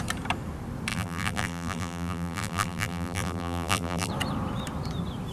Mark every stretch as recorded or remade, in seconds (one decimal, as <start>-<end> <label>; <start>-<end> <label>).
0.0-0.9 recorded; 0.9-4.1 remade; 4.1-5.3 recorded